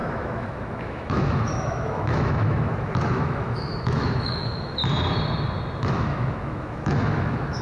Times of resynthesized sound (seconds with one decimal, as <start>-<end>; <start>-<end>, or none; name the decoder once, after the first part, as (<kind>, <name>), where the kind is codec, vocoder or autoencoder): 0.0-4.8 (autoencoder, DAC-VAE); 5.8-7.6